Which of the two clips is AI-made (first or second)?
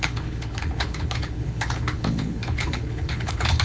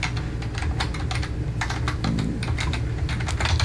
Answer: first